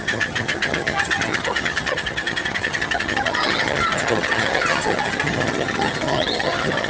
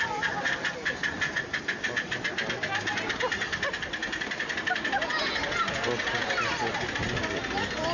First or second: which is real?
second